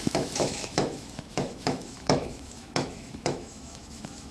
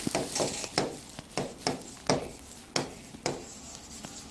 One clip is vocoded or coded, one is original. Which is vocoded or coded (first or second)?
first